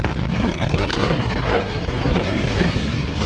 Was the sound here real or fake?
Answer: fake